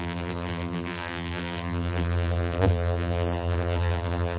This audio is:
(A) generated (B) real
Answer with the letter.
A